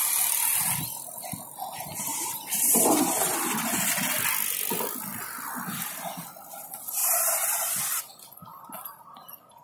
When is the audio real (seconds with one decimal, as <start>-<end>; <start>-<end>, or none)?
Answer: 0.0-2.1; 3.1-5.1; 6.3-7.0; 8.0-9.6